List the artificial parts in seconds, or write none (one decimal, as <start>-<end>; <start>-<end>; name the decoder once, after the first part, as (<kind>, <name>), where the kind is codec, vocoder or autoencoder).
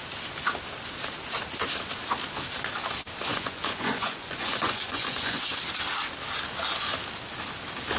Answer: 3.3-5.5 (vocoder, Vocos)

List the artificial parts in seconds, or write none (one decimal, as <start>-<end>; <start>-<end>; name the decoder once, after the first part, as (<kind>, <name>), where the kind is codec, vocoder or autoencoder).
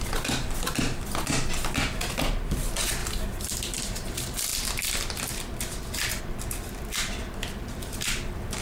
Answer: 3.0-3.5 (vocoder, BigVGAN v2)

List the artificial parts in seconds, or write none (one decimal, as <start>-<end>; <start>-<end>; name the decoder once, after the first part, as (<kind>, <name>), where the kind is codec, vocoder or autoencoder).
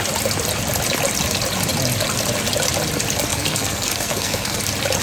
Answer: 3.3-4.6 (codec, SNAC)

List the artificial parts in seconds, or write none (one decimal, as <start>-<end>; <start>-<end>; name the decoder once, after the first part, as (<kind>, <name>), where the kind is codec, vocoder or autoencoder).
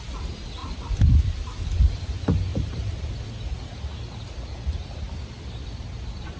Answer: 0.6-2.0 (vocoder, BigVGAN v2); 2.5-3.0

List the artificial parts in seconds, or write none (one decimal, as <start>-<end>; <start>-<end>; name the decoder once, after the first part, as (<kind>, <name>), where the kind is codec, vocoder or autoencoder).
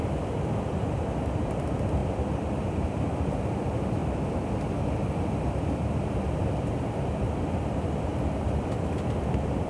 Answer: 0.0-4.0 (vocoder, BigVGAN v2); 4.9-9.7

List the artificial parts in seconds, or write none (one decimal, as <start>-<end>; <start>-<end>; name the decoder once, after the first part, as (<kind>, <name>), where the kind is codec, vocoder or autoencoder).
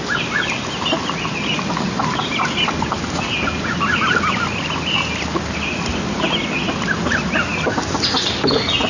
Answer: none